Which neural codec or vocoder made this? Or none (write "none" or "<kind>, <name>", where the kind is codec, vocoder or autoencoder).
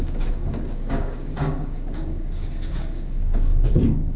codec, DAC